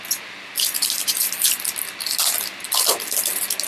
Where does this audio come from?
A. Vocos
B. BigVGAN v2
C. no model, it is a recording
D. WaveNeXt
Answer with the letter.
C